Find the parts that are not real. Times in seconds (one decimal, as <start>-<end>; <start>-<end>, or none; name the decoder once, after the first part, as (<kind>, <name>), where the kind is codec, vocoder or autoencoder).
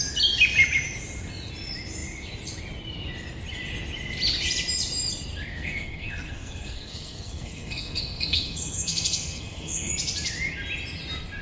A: 5.5-9.9 (codec, SNAC)